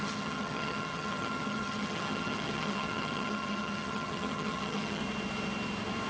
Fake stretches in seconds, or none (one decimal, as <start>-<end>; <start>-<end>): 0.0-5.0